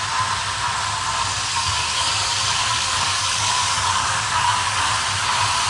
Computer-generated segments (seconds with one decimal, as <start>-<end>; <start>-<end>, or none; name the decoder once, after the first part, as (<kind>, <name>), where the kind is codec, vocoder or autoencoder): 1.5-4.9 (codec, DAC)